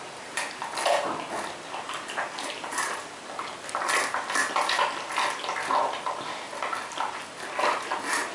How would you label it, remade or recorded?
recorded